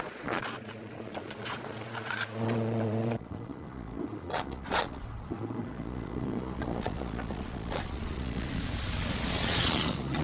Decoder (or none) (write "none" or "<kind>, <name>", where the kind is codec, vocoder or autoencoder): vocoder, Vocos